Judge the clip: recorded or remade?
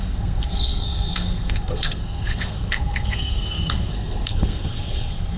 remade